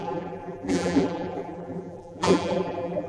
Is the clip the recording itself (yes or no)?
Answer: no